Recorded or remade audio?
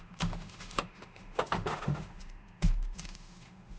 remade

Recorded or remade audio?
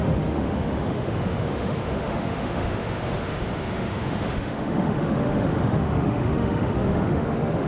remade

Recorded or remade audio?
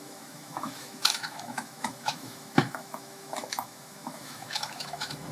remade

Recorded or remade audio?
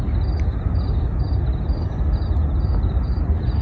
recorded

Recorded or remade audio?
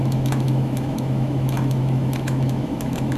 remade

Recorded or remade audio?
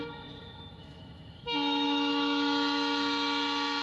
remade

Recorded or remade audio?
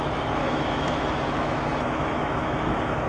remade